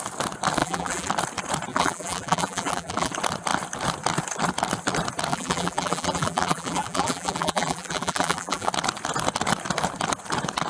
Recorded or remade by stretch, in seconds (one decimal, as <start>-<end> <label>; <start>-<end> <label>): 0.0-0.6 recorded; 0.6-1.1 remade; 1.1-1.7 recorded; 1.7-3.1 remade; 3.1-5.3 recorded; 5.3-8.7 remade; 8.7-10.7 recorded